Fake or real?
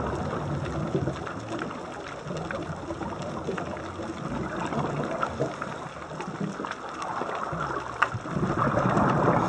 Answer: real